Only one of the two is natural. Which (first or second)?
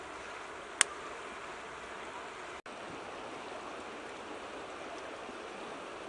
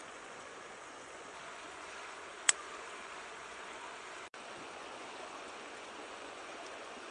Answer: first